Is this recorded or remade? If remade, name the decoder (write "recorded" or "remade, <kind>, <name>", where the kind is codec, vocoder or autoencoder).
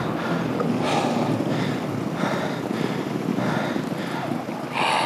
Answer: recorded